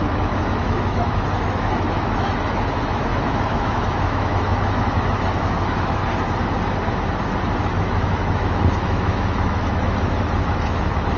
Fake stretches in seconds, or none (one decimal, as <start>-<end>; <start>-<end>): 0.0-6.0; 7.6-11.2